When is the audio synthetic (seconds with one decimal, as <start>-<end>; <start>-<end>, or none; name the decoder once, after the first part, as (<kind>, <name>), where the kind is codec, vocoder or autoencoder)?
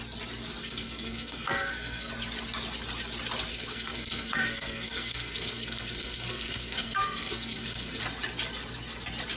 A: 0.6-2.1 (codec, SNAC); 3.5-8.0